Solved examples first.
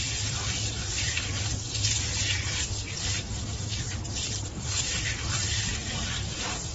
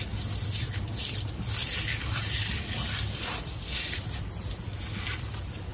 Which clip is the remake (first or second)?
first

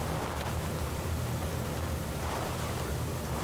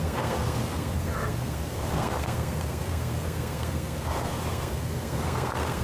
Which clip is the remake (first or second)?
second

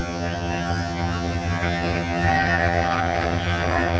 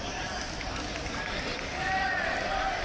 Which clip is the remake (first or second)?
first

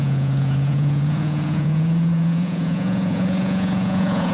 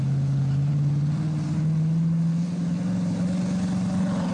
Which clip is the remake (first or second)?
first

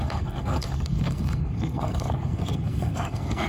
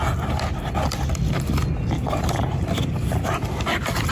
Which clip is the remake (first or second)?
first